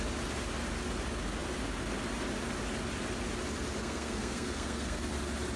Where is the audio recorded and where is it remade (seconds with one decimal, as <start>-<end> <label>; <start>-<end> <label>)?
0.0-3.8 recorded; 3.8-5.1 remade; 5.1-5.6 recorded